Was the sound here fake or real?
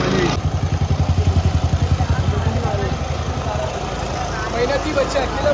real